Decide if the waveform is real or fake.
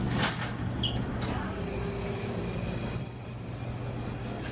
real